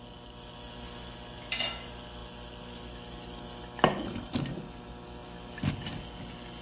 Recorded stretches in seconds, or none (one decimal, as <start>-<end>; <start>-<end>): 0.0-6.6

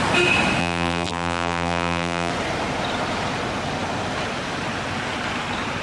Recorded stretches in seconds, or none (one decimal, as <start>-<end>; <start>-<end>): 0.0-0.6; 2.3-5.8

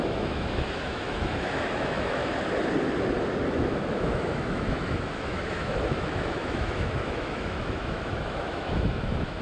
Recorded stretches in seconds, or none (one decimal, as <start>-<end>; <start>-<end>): 2.2-3.5

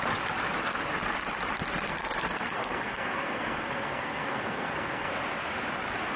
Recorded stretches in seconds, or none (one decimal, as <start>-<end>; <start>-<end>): 0.0-1.9; 5.1-6.2